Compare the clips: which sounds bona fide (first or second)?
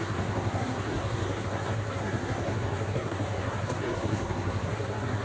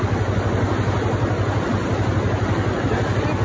second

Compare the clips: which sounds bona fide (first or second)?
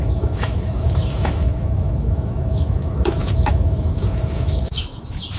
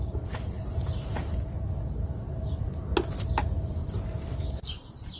second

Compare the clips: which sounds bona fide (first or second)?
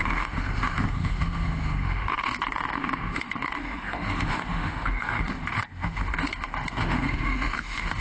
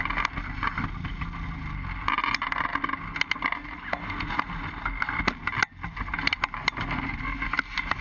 second